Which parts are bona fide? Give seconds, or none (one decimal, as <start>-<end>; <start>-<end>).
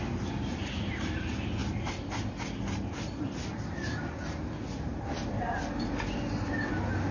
0.0-7.1